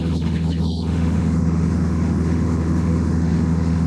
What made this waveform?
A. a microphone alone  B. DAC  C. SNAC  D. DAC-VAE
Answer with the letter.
D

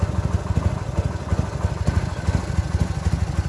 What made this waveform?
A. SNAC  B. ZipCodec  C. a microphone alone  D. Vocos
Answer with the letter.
C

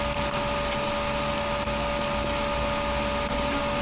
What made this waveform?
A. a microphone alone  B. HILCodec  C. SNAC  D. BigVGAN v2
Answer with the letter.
A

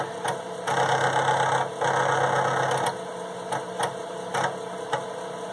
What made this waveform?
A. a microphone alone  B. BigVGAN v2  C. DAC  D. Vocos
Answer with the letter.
A